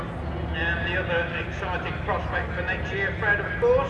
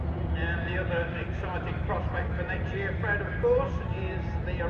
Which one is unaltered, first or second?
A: first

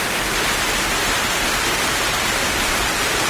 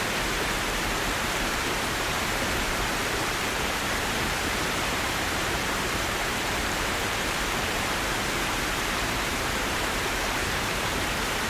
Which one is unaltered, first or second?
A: first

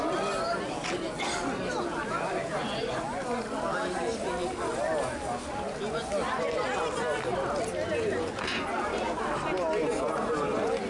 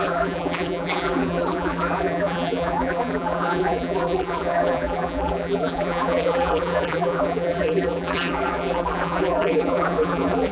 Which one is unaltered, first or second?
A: first